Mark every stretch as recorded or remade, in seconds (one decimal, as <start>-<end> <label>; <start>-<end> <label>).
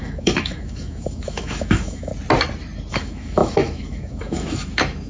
0.0-2.1 remade; 2.1-2.9 recorded; 2.9-5.1 remade